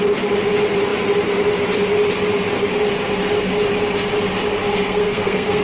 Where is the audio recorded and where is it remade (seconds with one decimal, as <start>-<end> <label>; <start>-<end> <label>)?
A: 0.0-4.7 recorded; 4.7-5.6 remade